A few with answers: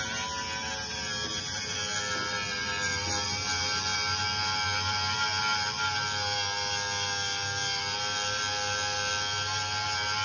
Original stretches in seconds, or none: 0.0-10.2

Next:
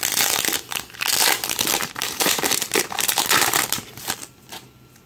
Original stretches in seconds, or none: 0.0-2.0; 4.2-5.1